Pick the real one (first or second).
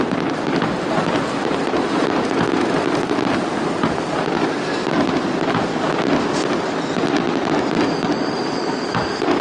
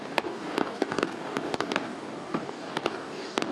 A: first